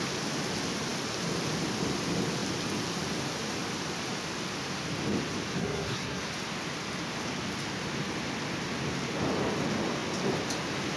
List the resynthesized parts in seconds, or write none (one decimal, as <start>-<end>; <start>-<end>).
5.6-6.2